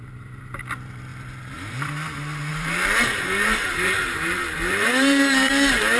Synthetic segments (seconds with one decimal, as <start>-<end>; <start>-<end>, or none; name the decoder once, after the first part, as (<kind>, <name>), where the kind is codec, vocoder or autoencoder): 2.5-6.0 (vocoder, BigVGAN v2)